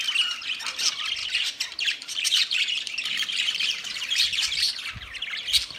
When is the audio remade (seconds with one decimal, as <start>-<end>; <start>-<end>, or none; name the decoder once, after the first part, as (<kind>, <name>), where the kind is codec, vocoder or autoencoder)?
1.2-4.7 (vocoder, BigVGAN v2)